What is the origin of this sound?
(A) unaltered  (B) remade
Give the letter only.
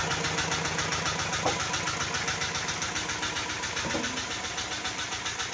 A